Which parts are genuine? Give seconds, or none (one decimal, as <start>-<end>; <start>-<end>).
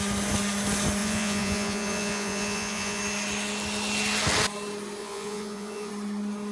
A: 0.0-1.0; 3.0-5.0; 5.9-6.5